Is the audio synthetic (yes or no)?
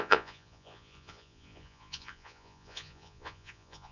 yes